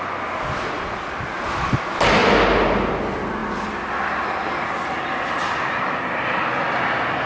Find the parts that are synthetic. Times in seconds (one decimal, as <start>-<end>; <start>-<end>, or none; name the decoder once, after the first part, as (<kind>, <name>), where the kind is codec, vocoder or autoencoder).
2.2-2.9 (vocoder, BigVGAN v2)